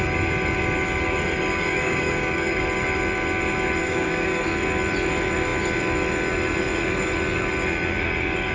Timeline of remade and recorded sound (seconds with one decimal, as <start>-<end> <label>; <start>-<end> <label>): 0.0-1.5 recorded; 1.5-2.6 remade; 2.6-3.8 recorded; 3.8-4.4 remade; 4.4-8.5 recorded